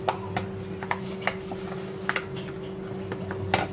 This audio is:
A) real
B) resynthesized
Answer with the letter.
A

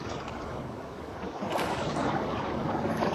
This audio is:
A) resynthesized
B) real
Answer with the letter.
A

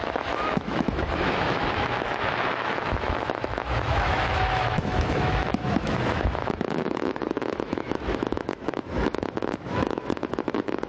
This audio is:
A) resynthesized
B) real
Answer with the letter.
A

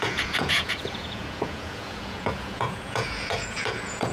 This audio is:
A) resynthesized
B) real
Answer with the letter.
A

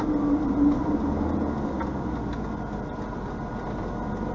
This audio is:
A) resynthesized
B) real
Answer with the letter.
B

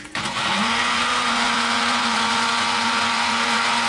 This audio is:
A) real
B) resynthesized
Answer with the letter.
B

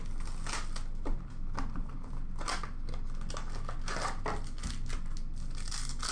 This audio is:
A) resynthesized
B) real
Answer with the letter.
B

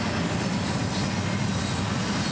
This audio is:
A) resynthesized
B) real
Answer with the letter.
B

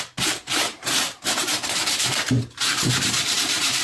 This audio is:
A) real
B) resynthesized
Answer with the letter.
B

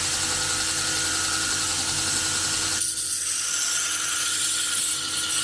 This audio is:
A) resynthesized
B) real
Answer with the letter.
B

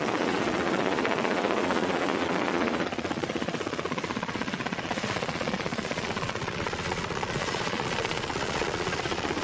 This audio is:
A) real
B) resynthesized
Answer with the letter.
B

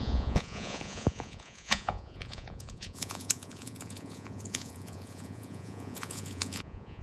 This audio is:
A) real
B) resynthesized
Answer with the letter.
B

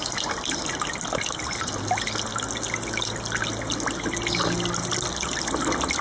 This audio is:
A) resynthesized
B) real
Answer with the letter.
B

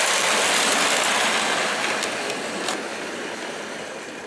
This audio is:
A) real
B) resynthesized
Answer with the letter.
A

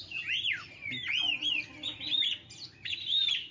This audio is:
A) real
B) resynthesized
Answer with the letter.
A